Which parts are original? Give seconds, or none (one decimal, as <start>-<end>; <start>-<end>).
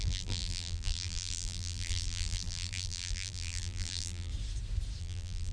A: 4.3-5.0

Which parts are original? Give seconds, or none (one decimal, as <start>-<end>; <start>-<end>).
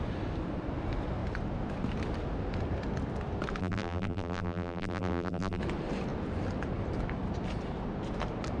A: 0.0-3.6; 5.6-8.6